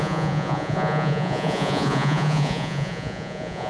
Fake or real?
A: fake